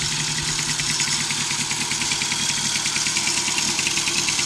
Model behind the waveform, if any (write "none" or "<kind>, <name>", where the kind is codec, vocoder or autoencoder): none